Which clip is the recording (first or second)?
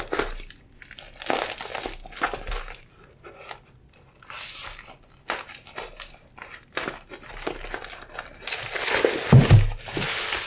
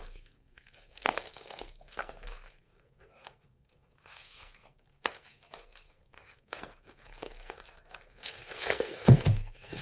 first